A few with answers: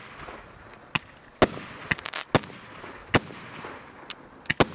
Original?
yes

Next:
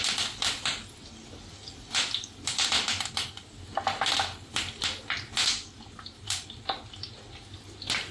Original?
yes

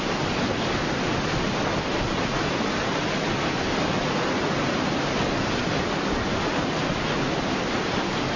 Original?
yes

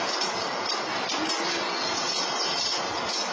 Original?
yes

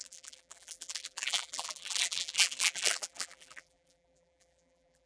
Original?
no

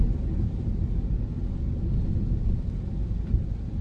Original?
yes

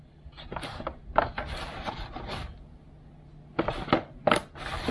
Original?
yes